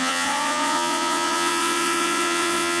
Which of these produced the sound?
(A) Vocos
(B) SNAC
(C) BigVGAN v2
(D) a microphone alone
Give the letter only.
A